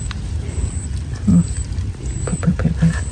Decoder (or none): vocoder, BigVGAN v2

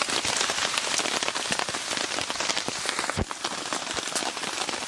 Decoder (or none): none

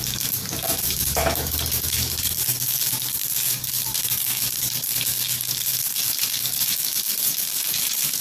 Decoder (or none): codec, DAC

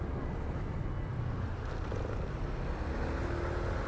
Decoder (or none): none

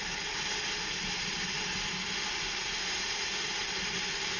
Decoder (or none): vocoder, BigVGAN v2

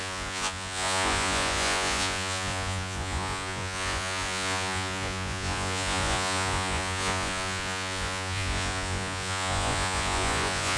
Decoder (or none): vocoder, Vocos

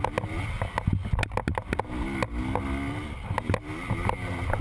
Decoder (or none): none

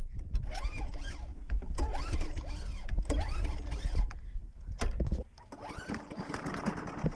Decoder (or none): none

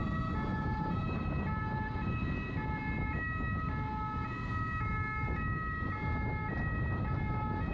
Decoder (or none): none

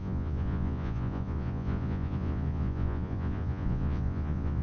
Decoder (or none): vocoder, Vocos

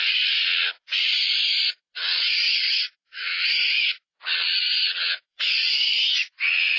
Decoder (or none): vocoder, Vocos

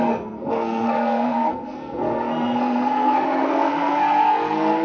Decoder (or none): codec, SNAC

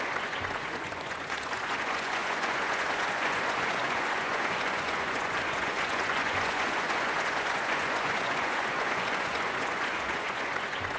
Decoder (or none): vocoder, Vocos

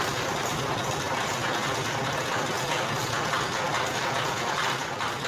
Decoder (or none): none